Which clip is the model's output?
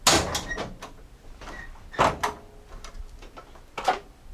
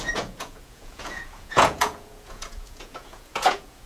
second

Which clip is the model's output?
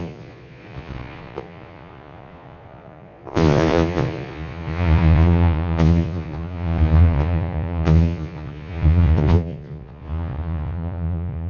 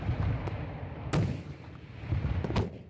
first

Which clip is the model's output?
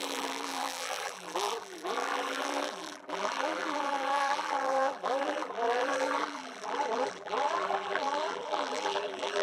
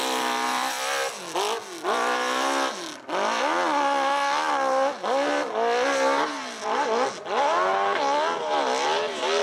first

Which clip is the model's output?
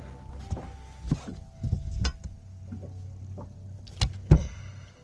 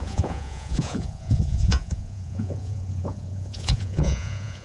second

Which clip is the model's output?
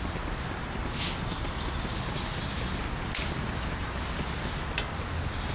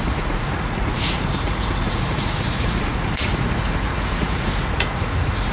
second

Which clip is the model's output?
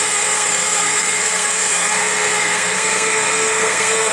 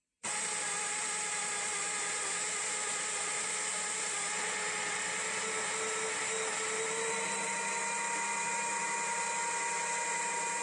first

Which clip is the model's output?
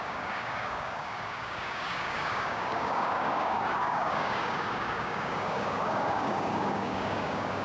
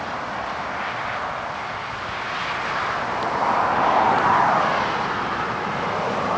first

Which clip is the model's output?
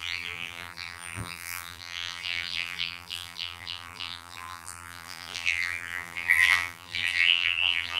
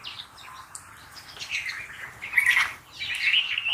first